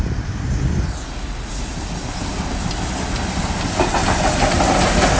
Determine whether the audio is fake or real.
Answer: real